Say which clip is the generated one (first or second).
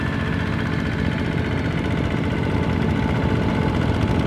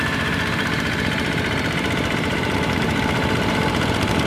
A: second